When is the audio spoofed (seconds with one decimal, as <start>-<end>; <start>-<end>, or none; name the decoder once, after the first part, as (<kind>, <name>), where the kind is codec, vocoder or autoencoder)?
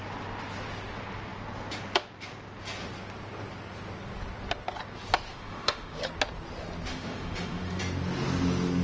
5.3-6.0 (autoencoder, DAC-VAE); 6.9-7.8